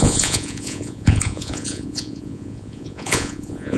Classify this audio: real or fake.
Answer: fake